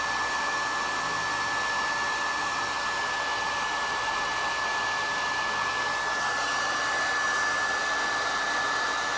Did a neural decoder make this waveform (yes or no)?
no